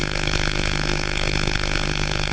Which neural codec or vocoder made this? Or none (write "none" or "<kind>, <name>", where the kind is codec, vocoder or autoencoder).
codec, SNAC